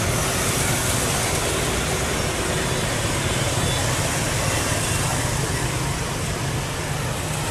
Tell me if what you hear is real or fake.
real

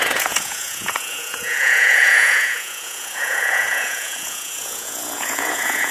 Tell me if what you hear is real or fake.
fake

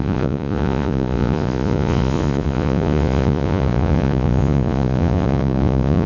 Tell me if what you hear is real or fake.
fake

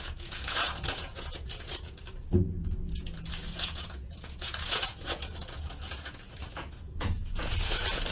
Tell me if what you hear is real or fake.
fake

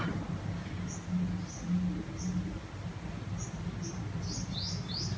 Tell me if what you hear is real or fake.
real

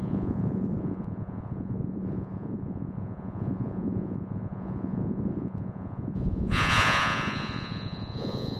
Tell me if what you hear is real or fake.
fake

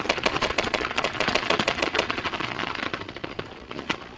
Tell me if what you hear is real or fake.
fake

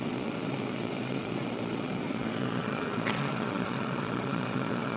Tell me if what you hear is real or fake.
fake